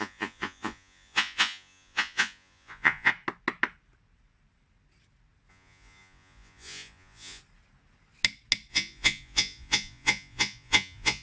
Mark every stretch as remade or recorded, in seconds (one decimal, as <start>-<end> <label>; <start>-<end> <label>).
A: 0.0-3.1 remade; 3.1-5.5 recorded; 5.5-7.4 remade; 7.4-8.7 recorded; 8.7-11.2 remade